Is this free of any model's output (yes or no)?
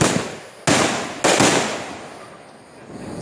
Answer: yes